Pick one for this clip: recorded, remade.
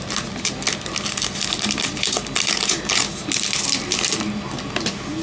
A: recorded